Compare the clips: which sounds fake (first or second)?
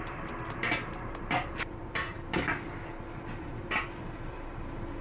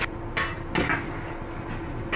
first